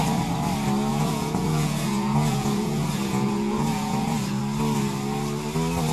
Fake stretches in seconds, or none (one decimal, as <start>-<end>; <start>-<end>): 0.9-4.4